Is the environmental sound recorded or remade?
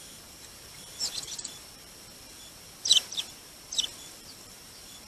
remade